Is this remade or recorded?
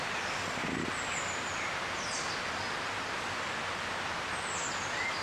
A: recorded